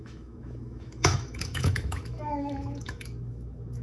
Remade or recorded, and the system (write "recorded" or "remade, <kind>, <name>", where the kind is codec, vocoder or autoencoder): remade, autoencoder, DAC-VAE